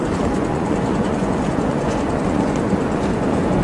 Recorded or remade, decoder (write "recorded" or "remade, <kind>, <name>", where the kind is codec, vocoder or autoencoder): remade, vocoder, Vocos